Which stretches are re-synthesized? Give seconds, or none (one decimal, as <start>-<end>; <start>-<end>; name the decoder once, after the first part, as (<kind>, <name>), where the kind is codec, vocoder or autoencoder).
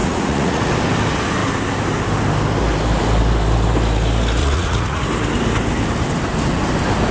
0.0-0.7 (vocoder, Vocos); 4.4-5.0